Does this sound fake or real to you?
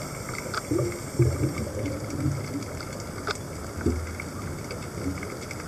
real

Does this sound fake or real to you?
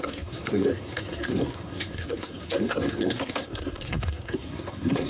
fake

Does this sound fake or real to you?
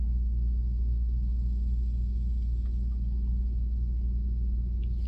real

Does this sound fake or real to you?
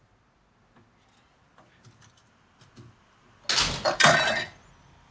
real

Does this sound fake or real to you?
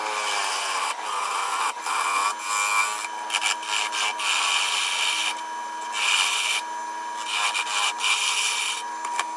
real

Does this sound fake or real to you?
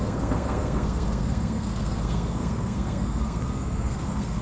fake